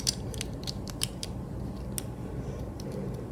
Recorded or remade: recorded